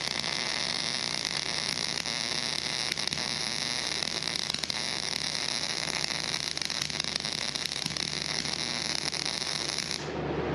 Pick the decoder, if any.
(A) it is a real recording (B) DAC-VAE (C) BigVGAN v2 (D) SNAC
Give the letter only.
C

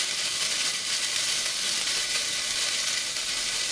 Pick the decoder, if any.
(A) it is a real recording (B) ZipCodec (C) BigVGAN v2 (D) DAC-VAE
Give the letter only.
A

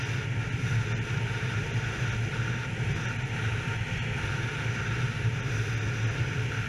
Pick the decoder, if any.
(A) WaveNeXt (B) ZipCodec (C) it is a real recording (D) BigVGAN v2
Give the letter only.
C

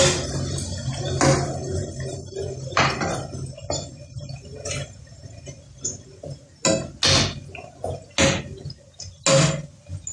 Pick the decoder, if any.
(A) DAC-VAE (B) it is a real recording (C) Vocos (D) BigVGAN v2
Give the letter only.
B